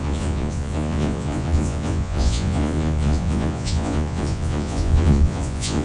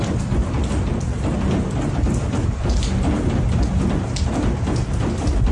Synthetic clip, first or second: first